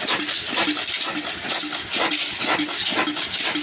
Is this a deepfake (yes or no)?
no